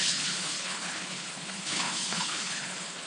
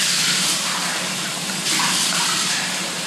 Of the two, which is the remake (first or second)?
first